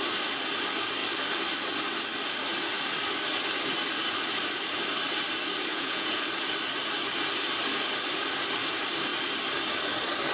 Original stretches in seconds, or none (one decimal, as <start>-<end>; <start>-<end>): 0.0-5.7; 6.3-10.3